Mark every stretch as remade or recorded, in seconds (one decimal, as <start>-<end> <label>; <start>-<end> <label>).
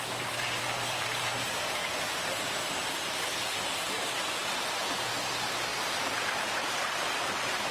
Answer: 0.0-1.8 recorded; 1.8-3.1 remade; 3.1-4.4 recorded; 4.4-5.0 remade; 5.0-5.7 recorded; 5.7-7.3 remade; 7.3-7.7 recorded